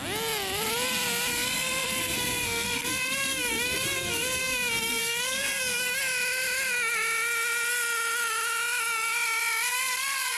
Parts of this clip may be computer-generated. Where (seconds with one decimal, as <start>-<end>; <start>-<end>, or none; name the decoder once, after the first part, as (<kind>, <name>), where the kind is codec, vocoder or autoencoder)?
1.3-6.0 (codec, SNAC); 9.7-10.4